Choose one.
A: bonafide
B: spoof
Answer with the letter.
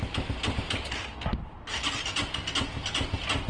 A